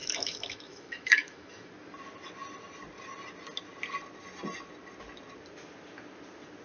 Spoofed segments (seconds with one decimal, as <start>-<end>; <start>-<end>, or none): 0.0-1.7